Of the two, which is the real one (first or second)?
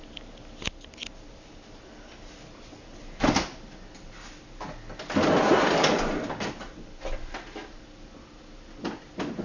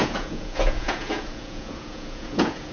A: first